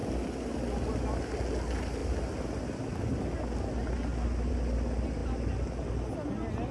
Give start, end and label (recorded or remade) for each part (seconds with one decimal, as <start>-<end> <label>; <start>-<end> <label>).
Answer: 0.0-6.7 recorded